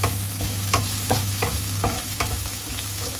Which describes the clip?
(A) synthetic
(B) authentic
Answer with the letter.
A